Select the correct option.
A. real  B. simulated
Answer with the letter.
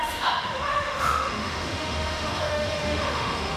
B